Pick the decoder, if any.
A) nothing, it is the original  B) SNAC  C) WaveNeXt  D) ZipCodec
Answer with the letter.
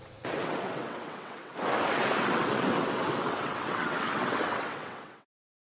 C